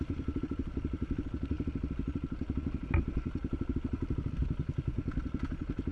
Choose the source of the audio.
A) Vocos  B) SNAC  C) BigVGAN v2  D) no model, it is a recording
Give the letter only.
D